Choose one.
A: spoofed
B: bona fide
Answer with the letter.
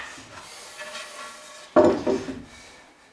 B